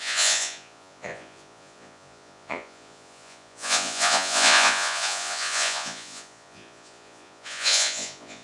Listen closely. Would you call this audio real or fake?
fake